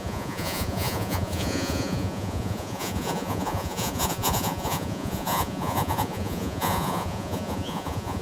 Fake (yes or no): yes